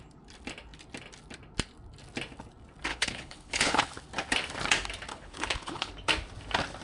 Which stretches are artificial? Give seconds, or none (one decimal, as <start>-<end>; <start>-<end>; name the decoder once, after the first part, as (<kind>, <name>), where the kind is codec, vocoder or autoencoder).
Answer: 2.9-3.9 (codec, HILCodec); 5.1-5.9